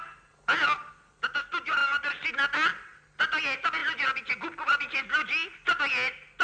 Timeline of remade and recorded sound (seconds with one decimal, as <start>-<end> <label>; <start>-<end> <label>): 0.0-6.4 recorded